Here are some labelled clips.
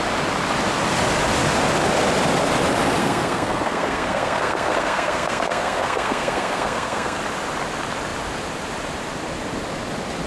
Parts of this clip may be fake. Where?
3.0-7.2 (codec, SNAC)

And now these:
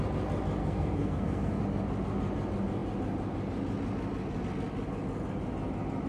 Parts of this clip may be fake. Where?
0.6-1.6 (codec, SNAC)

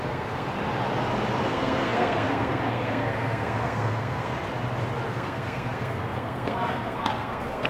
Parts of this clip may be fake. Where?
0.0-0.5 (codec, SNAC); 1.5-4.3; 5.1-7.7

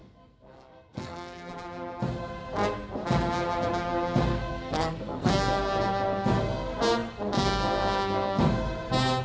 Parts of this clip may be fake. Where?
0.0-1.5 (codec, SNAC); 4.3-5.3

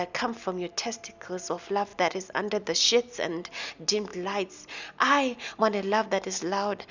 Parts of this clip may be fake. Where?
none

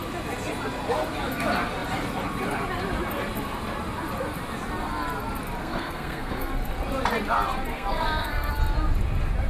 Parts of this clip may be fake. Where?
5.6-6.5 (codec, SNAC); 7.7-8.5